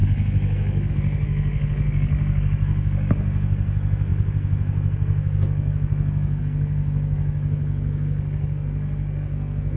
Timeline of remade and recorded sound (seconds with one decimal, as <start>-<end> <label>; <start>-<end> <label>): 0.0-9.8 remade